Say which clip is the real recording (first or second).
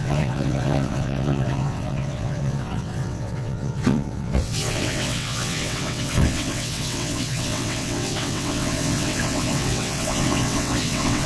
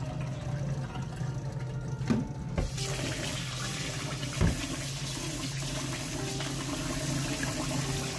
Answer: second